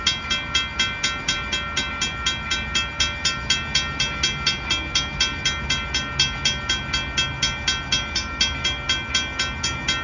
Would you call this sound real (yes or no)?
yes